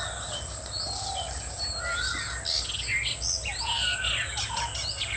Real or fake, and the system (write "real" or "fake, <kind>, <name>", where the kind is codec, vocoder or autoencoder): real